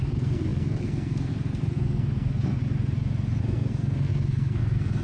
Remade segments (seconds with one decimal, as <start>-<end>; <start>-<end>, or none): 0.0-2.6; 3.4-5.0